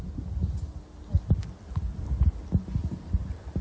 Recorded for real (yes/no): yes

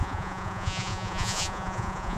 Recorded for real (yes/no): no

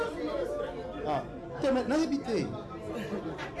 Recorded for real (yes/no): yes